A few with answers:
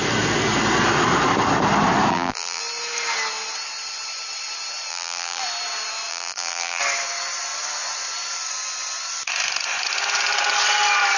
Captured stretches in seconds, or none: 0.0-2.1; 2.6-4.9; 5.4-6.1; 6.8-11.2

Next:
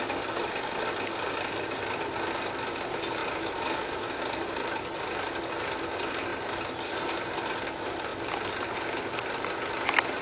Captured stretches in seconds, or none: 0.0-10.2

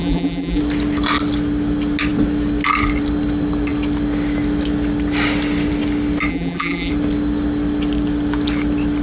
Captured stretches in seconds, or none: 0.6-6.3; 6.9-9.0

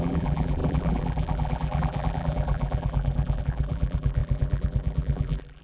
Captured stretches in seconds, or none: none